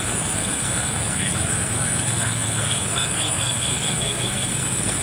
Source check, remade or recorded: remade